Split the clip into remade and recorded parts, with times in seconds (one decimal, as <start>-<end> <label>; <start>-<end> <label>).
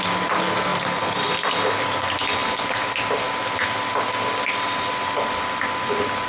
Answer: 0.0-2.4 recorded; 2.4-5.4 remade; 5.4-6.3 recorded